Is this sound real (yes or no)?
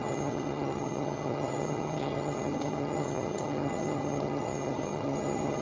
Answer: no